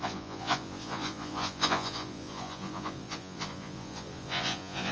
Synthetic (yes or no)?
yes